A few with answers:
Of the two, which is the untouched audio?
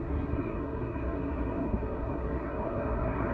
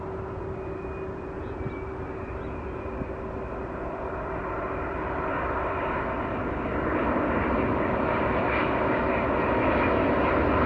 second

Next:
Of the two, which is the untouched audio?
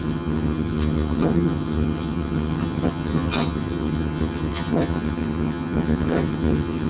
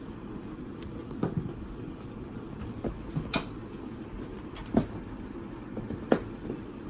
second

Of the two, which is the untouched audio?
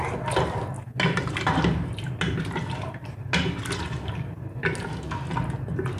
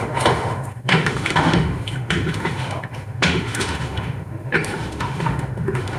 first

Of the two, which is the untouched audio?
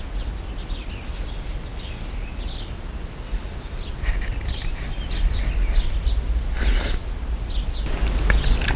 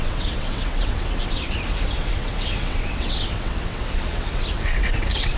first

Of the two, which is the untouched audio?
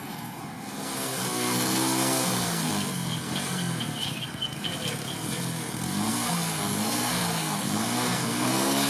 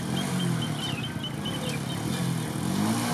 second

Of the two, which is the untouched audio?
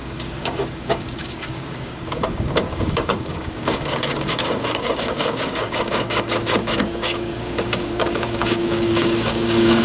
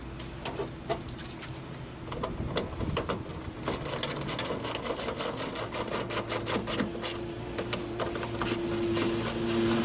second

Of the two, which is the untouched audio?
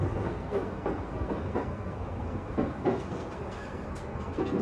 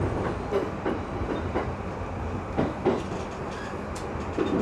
second